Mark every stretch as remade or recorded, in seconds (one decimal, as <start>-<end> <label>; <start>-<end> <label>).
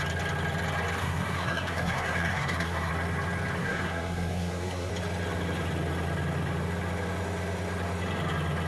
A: 0.0-1.0 recorded; 1.0-2.9 remade; 2.9-3.6 recorded; 3.6-4.9 remade; 4.9-8.7 recorded